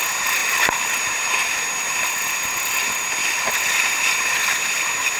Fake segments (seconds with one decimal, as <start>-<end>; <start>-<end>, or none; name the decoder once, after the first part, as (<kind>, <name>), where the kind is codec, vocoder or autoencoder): none